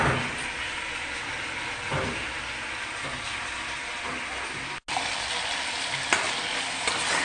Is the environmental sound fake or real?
real